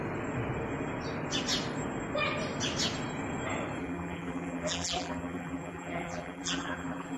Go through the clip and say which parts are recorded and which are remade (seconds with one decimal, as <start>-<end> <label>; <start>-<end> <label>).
0.0-3.8 recorded; 3.8-7.2 remade